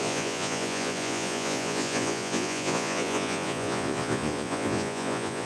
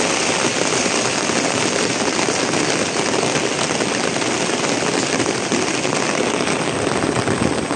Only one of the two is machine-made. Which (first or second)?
first